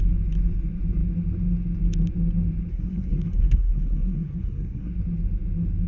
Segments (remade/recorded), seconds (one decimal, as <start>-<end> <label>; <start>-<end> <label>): 0.0-2.7 recorded; 2.7-4.9 remade; 4.9-5.9 recorded